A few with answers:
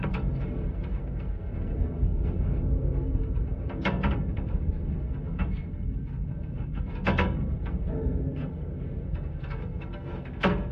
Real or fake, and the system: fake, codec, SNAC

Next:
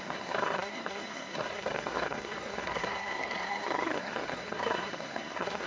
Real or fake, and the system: fake, codec, SNAC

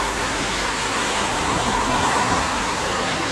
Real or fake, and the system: fake, codec, SNAC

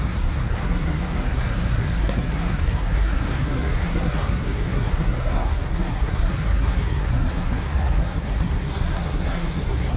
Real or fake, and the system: fake, codec, SNAC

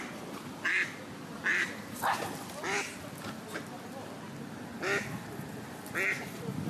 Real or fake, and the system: real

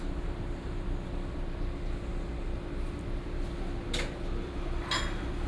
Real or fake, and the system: real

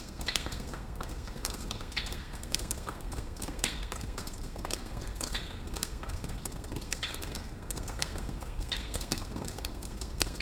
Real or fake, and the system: fake, codec, SNAC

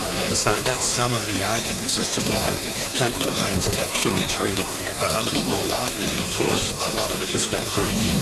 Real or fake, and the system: fake, codec, SNAC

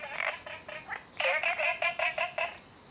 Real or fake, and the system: real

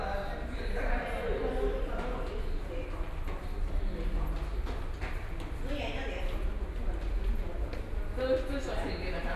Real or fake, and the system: real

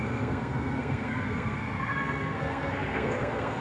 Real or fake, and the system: fake, codec, SNAC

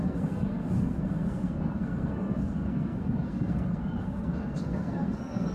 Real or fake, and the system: fake, codec, SNAC